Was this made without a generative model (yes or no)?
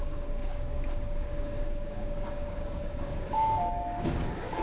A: no